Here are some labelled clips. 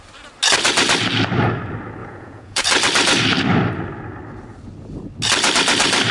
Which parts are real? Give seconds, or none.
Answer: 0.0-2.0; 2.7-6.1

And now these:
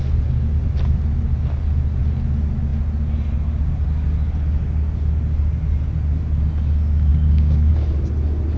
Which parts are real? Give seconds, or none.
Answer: 0.0-7.1; 7.7-8.6

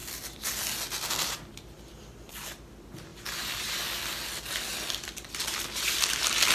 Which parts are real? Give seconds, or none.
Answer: 0.0-6.5

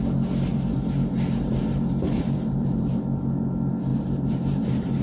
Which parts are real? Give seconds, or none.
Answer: 0.0-0.5; 3.0-3.9

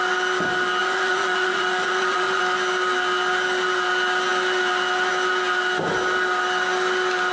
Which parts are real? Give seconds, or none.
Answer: 0.0-0.8; 2.4-7.3

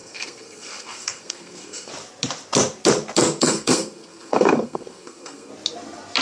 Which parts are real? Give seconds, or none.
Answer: 1.9-3.4; 5.5-6.2

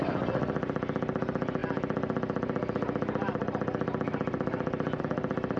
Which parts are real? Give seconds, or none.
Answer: 0.0-5.6

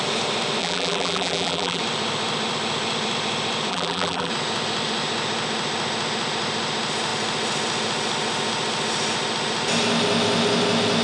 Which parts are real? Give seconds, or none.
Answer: 0.0-0.6; 1.8-3.7; 4.3-11.0